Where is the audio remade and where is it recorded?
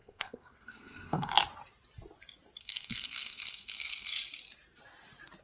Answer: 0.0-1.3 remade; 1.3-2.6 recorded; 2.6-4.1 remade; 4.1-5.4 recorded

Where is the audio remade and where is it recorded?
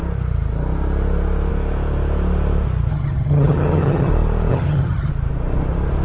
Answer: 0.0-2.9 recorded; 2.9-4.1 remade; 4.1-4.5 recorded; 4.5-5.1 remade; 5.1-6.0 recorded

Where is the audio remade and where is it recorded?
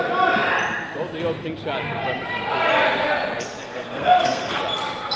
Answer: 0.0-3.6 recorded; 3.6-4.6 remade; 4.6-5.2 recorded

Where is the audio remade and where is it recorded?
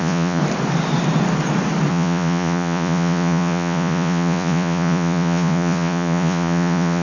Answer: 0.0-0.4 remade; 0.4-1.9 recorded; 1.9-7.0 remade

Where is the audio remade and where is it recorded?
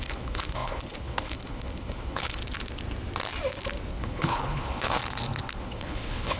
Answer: 0.0-2.4 remade; 2.4-3.9 recorded; 3.9-5.0 remade; 5.0-5.6 recorded; 5.6-6.4 remade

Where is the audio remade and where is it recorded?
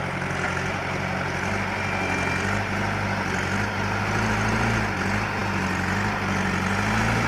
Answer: 0.0-7.3 recorded